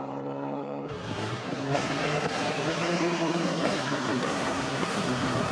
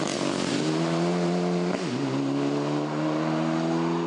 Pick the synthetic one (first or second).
first